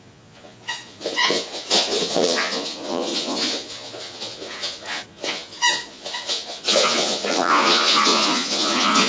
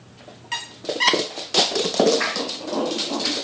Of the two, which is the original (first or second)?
second